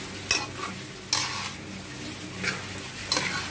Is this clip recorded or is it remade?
recorded